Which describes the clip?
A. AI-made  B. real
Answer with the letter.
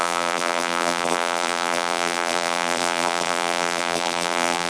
A